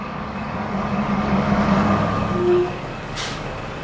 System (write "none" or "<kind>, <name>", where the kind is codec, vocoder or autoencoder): codec, DAC